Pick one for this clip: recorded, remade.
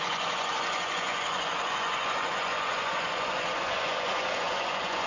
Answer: remade